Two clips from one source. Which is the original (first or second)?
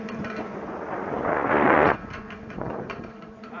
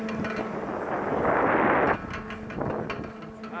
second